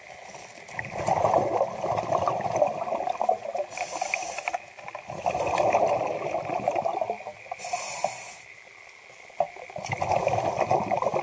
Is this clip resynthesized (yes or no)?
no